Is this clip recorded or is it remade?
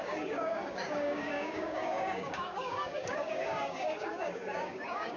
remade